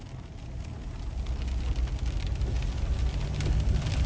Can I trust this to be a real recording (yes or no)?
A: yes